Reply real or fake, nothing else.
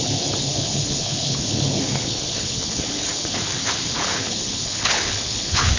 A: fake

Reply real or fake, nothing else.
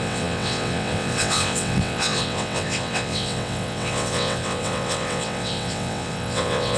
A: fake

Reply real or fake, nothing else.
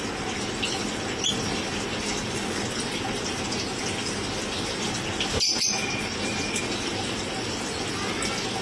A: real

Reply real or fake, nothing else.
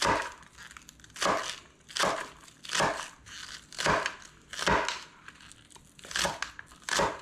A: real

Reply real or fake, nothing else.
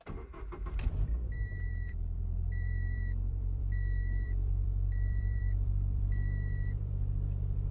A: fake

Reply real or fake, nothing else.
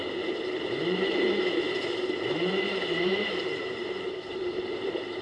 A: fake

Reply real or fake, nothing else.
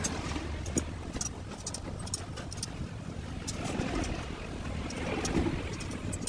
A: real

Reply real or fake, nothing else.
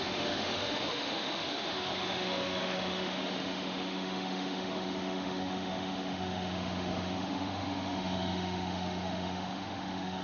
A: fake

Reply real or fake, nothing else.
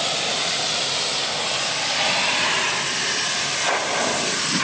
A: real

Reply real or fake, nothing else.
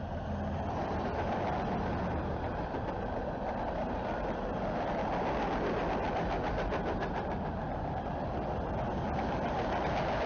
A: real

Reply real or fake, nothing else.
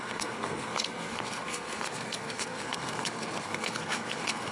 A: fake